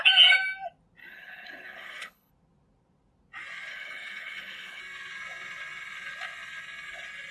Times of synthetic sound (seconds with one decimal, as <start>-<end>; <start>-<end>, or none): 1.0-2.3; 3.7-4.8